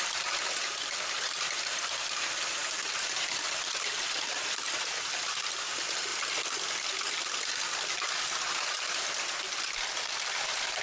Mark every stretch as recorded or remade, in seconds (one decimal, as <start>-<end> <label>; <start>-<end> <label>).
0.0-6.1 remade; 6.1-9.9 recorded; 9.9-10.8 remade